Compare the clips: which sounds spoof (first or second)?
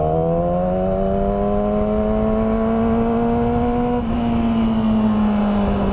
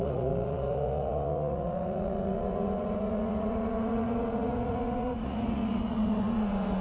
second